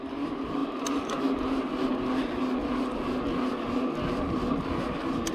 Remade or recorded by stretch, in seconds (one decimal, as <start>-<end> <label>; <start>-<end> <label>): 0.0-5.3 recorded